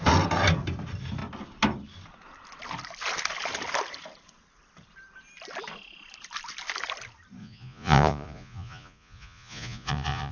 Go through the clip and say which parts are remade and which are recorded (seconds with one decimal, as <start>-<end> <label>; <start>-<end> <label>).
0.0-7.4 recorded; 7.4-10.3 remade